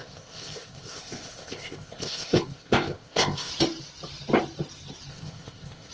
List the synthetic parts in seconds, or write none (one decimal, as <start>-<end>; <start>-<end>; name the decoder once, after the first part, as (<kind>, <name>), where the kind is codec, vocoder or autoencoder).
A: 0.0-3.5 (codec, ZipCodec); 5.1-5.9